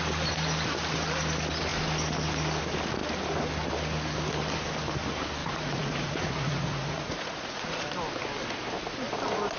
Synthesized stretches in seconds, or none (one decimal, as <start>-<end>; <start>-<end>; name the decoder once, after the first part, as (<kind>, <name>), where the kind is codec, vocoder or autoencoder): 5.4-7.8 (vocoder, Vocos)

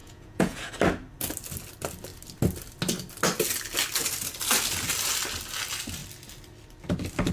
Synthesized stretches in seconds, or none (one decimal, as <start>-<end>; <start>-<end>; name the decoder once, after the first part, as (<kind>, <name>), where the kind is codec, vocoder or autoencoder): 0.0-0.7 (vocoder, Vocos)

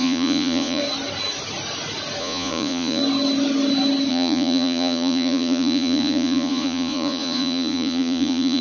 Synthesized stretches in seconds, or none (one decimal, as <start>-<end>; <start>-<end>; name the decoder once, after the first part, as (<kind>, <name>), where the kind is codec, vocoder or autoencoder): 0.0-0.8 (vocoder, Vocos); 2.2-3.0; 4.1-8.6

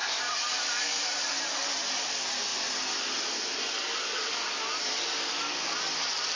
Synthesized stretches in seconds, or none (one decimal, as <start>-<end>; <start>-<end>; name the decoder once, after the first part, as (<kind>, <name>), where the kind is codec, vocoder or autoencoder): none

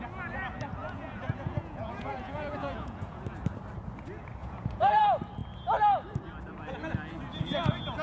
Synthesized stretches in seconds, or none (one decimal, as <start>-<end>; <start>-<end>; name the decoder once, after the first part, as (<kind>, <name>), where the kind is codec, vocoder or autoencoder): 0.8-3.2 (vocoder, Vocos); 4.4-5.0